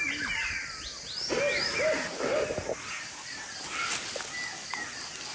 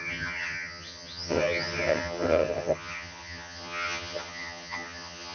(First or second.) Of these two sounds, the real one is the first